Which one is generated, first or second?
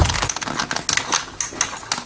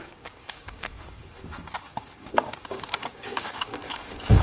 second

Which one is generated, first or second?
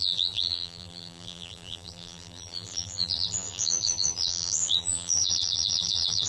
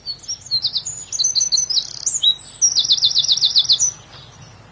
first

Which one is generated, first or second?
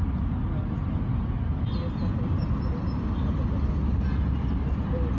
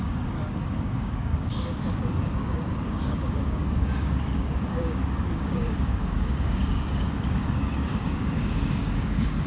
second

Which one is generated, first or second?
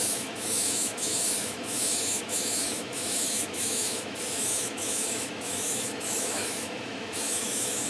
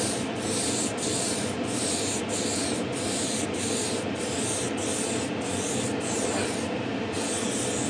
first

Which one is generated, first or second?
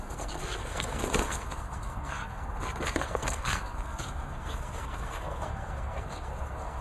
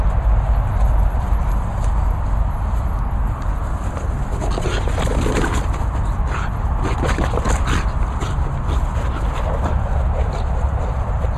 first